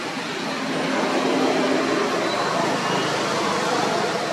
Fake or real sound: real